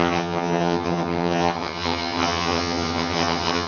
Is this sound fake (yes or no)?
yes